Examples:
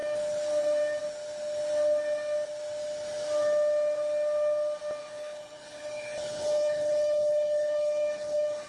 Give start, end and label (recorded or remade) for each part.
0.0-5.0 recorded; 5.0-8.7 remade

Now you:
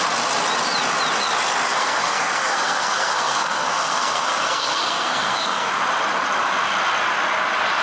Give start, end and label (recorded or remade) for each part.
0.0-1.7 recorded; 1.7-5.7 remade; 5.7-7.8 recorded

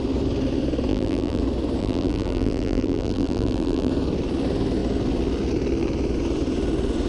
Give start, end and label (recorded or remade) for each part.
0.0-0.9 recorded; 0.9-1.4 remade; 1.4-1.8 recorded; 1.8-3.9 remade; 3.9-7.1 recorded

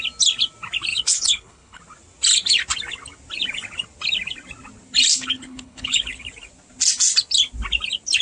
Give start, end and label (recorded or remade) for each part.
0.0-0.9 recorded; 0.9-1.8 remade; 1.8-5.1 recorded; 5.1-6.3 remade; 6.3-8.2 recorded

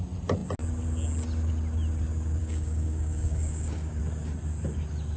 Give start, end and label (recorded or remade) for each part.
0.0-2.4 recorded; 2.4-4.0 remade; 4.0-5.2 recorded

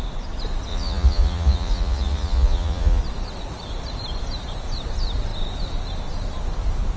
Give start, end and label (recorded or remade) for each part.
0.0-0.7 recorded; 0.7-3.0 remade; 3.0-7.0 recorded